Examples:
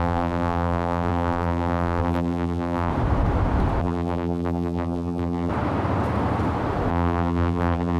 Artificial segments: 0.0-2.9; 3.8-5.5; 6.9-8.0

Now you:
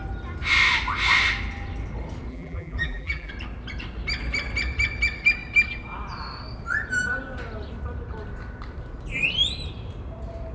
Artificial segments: 2.3-3.3